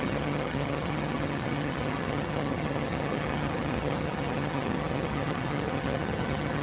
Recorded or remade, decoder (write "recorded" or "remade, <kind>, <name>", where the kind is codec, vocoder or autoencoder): remade, vocoder, HiFi-GAN